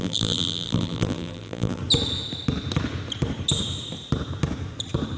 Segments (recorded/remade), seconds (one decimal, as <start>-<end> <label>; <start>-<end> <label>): 0.0-1.8 remade; 1.8-5.2 recorded